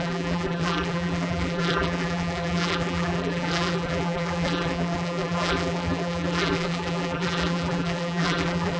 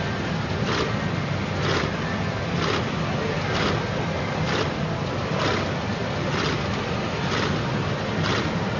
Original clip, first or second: second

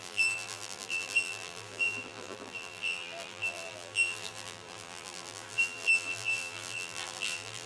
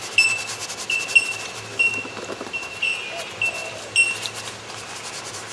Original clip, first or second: second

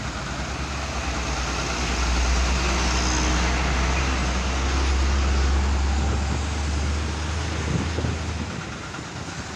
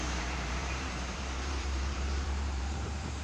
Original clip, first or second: first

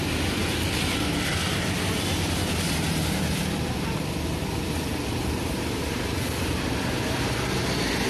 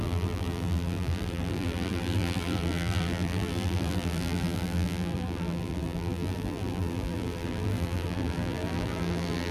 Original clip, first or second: first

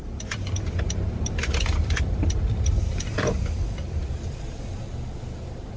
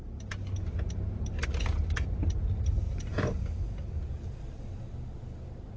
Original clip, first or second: second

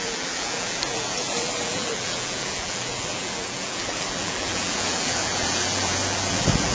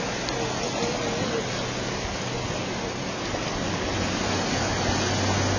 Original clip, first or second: second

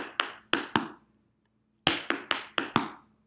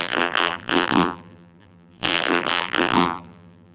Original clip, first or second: first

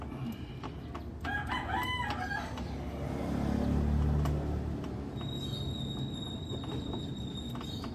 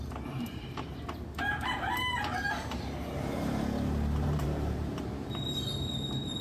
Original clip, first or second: first